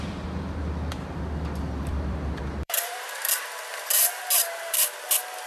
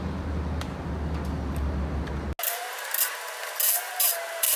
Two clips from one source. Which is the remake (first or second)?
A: first